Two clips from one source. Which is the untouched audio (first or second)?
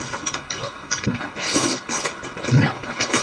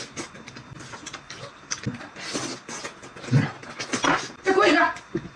second